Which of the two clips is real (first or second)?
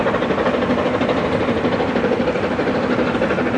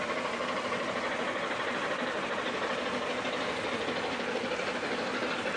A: second